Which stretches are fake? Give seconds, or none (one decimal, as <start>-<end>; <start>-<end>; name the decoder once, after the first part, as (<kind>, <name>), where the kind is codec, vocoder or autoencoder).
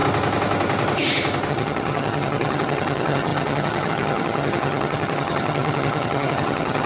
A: 1.5-6.9 (vocoder, HiFi-GAN)